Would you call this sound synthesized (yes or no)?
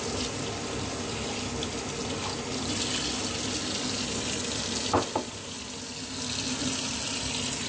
no